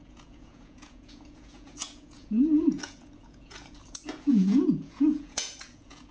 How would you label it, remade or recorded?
remade